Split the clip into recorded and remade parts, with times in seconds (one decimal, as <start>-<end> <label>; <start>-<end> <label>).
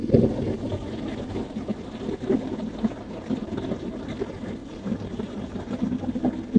0.0-4.6 recorded; 4.6-6.0 remade; 6.0-6.6 recorded